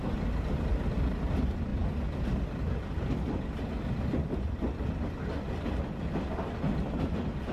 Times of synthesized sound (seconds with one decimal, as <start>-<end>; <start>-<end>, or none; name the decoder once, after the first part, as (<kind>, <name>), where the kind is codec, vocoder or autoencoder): none